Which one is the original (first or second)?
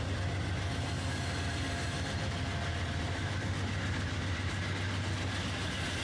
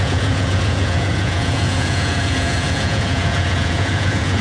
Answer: first